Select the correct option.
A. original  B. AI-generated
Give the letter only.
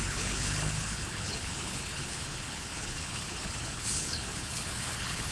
B